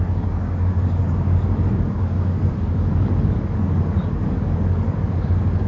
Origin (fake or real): fake